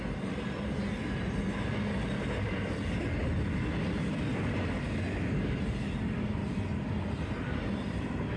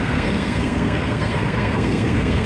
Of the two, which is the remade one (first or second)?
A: second